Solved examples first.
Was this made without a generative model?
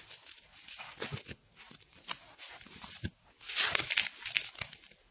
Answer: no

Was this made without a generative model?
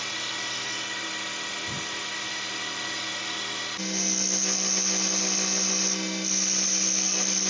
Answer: yes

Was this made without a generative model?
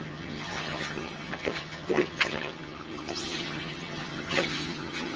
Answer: no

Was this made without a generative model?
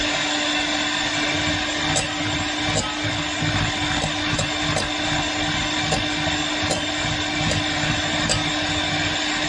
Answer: yes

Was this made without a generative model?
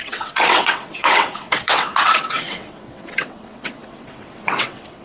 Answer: no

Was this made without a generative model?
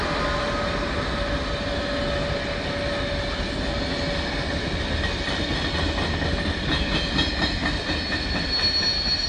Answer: yes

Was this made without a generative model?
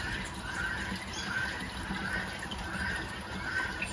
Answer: yes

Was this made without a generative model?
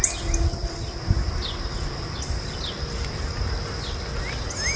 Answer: yes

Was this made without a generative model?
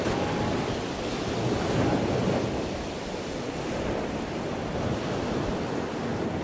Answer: yes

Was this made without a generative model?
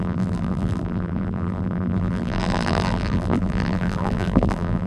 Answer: no